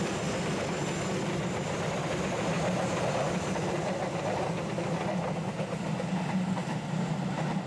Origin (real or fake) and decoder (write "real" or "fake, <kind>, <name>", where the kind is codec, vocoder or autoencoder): real